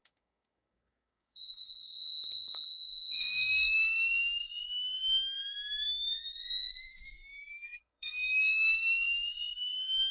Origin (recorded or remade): remade